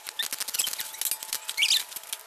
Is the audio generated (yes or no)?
no